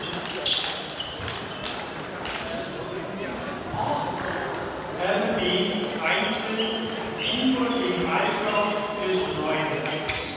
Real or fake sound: real